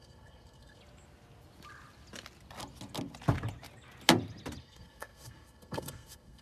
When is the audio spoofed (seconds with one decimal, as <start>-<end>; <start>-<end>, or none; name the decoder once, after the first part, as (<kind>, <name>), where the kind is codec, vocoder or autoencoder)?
0.0-0.8 (codec, SNAC); 4.6-6.4

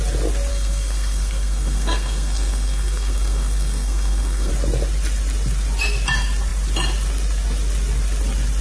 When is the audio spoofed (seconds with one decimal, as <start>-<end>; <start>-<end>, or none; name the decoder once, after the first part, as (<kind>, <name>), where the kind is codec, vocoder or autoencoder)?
0.5-4.5 (codec, SNAC)

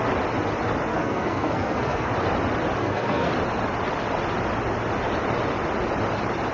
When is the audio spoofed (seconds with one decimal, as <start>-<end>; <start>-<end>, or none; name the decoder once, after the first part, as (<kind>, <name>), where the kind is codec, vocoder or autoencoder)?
0.9-2.1 (codec, SNAC); 2.8-3.3

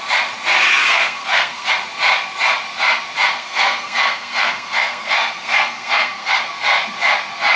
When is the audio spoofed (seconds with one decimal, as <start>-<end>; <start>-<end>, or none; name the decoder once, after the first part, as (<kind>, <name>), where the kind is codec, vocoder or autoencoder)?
0.8-1.7 (codec, SNAC); 3.4-6.4

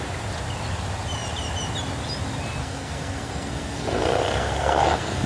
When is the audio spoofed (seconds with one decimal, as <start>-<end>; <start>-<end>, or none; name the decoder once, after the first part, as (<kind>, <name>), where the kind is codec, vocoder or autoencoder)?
2.6-5.3 (codec, SNAC)

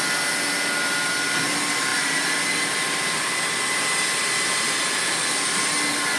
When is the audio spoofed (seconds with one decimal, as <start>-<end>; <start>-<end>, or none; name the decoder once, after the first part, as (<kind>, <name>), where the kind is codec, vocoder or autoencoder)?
none